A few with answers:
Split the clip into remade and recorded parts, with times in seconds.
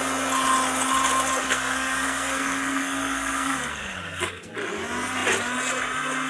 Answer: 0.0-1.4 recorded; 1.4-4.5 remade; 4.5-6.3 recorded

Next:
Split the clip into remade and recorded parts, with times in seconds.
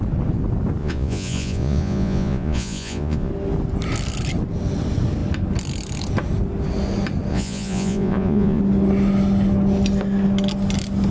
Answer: 0.0-0.8 recorded; 0.8-3.3 remade; 3.3-7.3 recorded; 7.3-8.6 remade; 8.6-11.1 recorded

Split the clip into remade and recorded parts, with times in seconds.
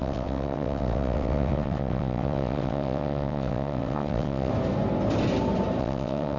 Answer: 0.0-4.5 remade; 4.5-5.8 recorded; 5.8-6.4 remade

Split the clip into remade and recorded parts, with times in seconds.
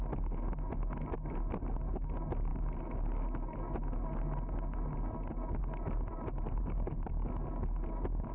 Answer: 0.0-6.1 recorded; 6.1-7.1 remade; 7.1-8.3 recorded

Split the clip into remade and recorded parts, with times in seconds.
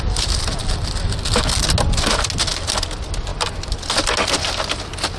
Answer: 0.0-5.2 recorded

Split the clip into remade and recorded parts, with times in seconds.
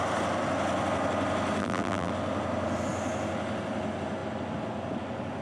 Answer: 0.0-1.6 recorded; 1.6-2.1 remade; 2.1-5.4 recorded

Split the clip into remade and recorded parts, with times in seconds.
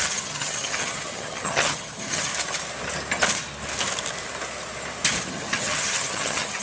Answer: 0.0-2.3 remade; 2.3-5.3 recorded; 5.3-6.6 remade